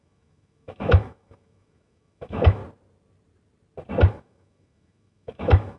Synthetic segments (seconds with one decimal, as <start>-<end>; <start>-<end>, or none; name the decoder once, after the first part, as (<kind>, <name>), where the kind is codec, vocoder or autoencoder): 0.0-2.6 (autoencoder, DAC-VAE); 4.1-5.8